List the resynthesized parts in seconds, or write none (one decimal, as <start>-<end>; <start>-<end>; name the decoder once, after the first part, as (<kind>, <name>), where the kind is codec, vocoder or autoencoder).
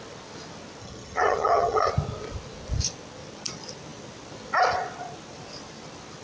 0.8-1.9 (vocoder, HiFi-GAN)